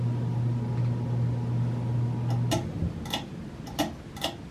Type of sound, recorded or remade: recorded